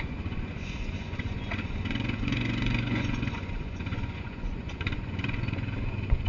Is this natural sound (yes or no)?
no